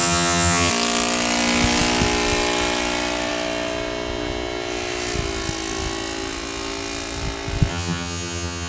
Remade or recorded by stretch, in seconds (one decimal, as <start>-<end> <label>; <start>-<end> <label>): 0.0-0.7 remade; 0.7-7.7 recorded; 7.7-8.7 remade